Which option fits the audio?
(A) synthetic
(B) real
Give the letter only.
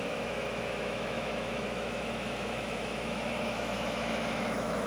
A